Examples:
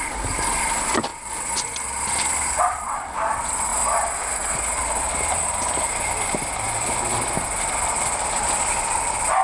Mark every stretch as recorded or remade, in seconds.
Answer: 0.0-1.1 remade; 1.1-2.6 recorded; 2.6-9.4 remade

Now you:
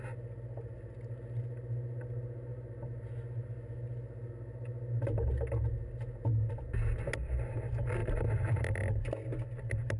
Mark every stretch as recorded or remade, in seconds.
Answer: 0.0-10.0 recorded

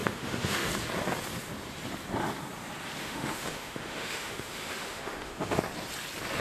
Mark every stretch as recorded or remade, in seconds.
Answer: 0.0-0.7 remade; 0.7-3.0 recorded; 3.0-5.6 remade; 5.6-6.4 recorded